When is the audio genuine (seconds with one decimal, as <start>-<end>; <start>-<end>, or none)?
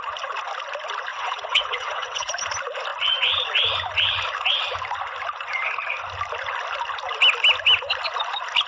0.0-1.1; 2.3-8.7